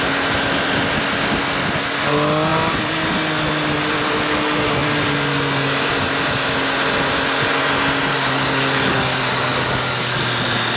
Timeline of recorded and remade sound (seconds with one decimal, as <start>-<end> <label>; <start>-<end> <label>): 0.0-8.1 recorded; 8.1-10.2 remade; 10.2-10.8 recorded